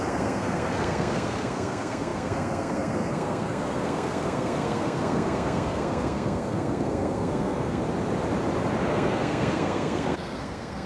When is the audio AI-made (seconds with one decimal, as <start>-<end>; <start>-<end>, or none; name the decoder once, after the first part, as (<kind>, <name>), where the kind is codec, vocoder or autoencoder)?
0.0-7.8 (codec, SNAC); 8.9-10.9